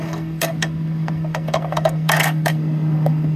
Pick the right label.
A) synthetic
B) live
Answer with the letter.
A